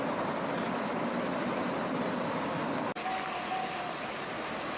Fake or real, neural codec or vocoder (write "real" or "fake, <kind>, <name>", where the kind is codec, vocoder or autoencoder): real